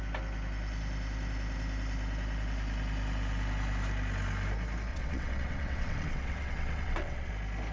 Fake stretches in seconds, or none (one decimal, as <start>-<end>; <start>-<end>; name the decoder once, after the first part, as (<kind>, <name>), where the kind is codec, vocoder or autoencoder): 4.9-7.3 (vocoder, WaveNeXt)